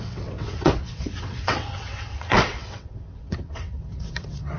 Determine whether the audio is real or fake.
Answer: fake